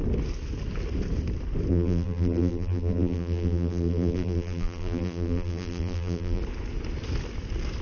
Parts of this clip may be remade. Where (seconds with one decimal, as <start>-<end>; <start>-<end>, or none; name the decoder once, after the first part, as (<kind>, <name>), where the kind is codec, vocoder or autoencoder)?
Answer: 1.7-6.4 (vocoder, BigVGAN v2)